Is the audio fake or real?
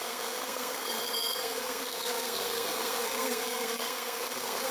fake